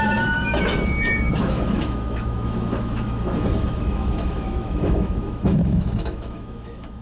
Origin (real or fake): fake